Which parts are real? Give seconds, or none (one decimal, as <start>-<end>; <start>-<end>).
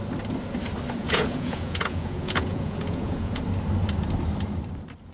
0.0-1.0; 3.4-5.1